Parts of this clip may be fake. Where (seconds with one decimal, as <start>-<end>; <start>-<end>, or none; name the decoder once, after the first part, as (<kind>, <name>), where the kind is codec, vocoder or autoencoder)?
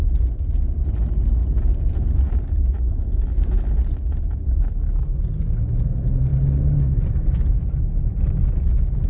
none